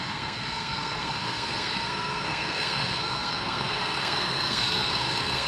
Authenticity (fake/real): fake